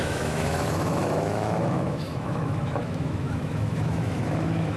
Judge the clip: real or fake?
fake